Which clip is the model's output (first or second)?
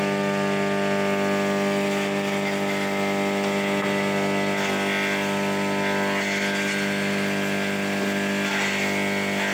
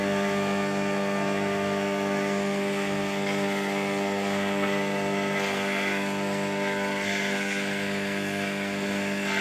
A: second